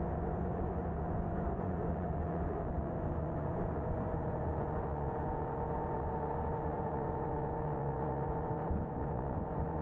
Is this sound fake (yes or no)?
yes